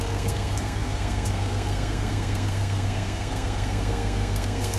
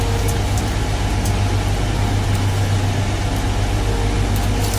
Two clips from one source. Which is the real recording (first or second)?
second